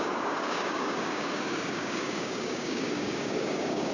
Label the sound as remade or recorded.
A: remade